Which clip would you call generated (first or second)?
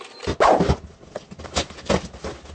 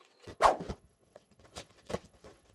second